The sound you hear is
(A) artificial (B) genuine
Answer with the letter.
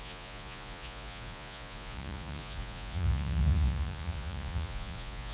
A